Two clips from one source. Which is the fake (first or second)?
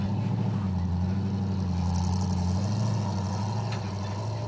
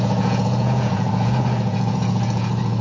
second